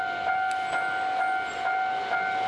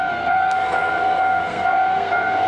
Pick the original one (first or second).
first